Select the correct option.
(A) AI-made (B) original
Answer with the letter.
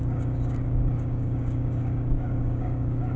A